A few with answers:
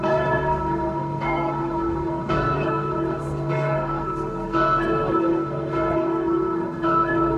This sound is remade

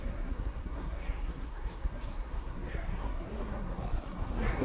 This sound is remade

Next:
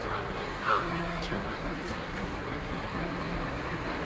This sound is remade